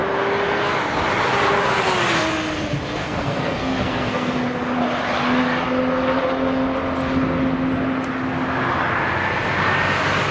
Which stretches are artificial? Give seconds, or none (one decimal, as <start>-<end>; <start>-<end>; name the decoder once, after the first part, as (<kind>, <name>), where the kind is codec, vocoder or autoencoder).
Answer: 3.0-4.4 (codec, SNAC)